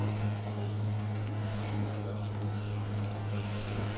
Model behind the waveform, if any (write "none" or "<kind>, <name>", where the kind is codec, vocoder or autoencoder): codec, DAC